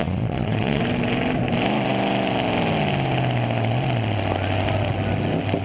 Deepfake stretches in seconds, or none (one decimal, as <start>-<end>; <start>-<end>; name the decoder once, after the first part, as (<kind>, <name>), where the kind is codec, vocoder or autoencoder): 0.0-0.8 (vocoder, Vocos)